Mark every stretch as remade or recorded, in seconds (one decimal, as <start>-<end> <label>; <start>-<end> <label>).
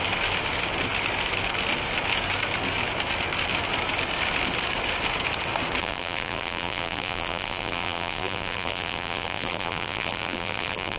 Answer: 0.0-5.8 recorded; 5.8-11.0 remade